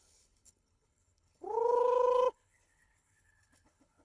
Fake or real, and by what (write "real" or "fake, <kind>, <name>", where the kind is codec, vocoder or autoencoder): fake, codec, HILCodec